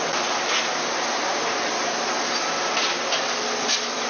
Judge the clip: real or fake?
real